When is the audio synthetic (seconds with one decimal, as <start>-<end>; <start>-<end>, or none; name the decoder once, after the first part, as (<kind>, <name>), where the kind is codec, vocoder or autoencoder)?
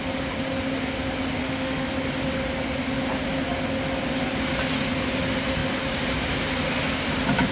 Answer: 1.4-1.9 (autoencoder, DAC-VAE)